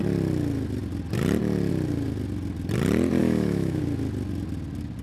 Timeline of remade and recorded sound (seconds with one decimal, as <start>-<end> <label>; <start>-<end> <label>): 0.0-3.2 recorded; 3.2-3.8 remade; 3.8-5.0 recorded